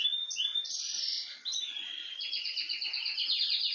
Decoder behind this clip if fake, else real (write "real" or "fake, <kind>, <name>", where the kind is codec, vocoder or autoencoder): real